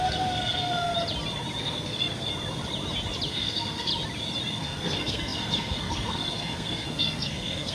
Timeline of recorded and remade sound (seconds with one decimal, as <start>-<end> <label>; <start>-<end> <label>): 0.0-0.9 remade; 0.9-1.6 recorded; 1.6-2.3 remade; 2.3-3.3 recorded; 3.3-3.9 remade; 3.9-4.5 recorded; 4.5-7.7 remade